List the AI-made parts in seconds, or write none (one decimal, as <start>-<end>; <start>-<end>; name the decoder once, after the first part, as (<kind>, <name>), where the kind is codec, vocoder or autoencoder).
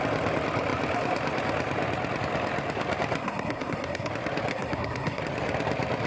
3.2-4.1 (codec, SNAC); 4.5-5.2